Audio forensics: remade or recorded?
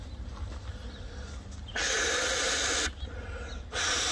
recorded